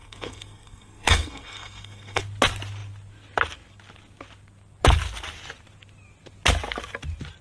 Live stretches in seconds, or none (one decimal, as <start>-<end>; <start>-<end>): 2.2-7.4